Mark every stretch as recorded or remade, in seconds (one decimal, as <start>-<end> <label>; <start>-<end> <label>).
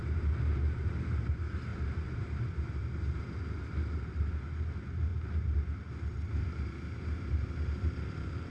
0.0-8.5 recorded